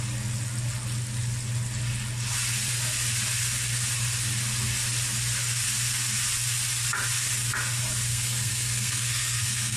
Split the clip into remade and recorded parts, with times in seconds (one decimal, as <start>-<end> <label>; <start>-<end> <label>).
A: 0.0-8.1 recorded; 8.1-9.8 remade